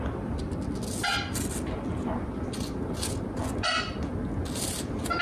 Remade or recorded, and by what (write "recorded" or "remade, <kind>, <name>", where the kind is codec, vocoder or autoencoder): recorded